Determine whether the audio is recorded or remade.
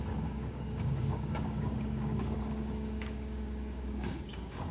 remade